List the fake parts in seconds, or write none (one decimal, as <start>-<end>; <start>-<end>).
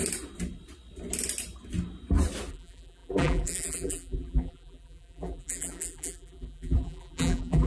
2.5-7.7